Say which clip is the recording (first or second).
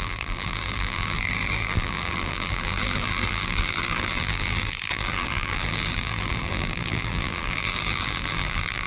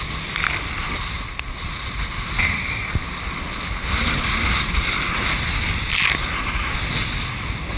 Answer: second